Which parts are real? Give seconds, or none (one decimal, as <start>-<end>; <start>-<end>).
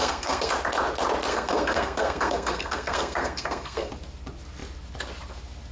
0.5-1.3; 3.9-5.7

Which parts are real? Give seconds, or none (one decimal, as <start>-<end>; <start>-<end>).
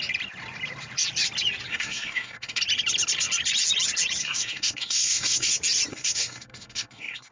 0.0-1.7; 2.6-4.2; 5.5-5.9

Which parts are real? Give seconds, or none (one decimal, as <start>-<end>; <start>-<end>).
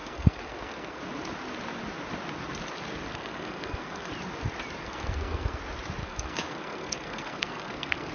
1.0-3.1; 4.1-4.8; 5.6-6.0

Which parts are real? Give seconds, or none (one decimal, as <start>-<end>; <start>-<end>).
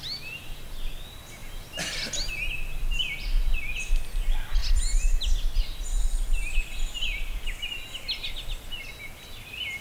0.0-9.8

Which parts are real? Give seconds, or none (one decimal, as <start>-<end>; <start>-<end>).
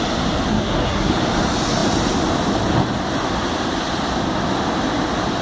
0.0-0.5; 1.1-5.4